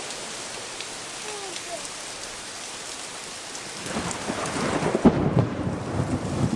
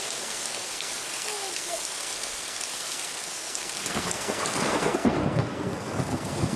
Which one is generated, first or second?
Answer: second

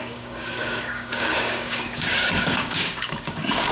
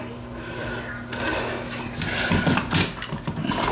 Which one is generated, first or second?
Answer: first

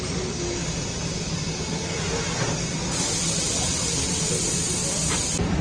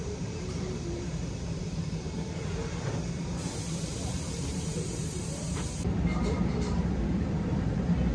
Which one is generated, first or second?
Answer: second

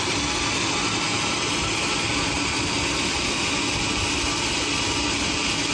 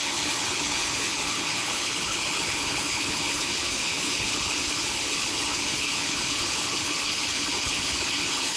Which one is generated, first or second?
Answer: second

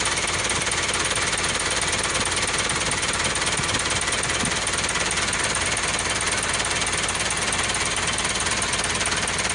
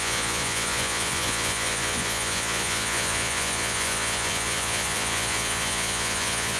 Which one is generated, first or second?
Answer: second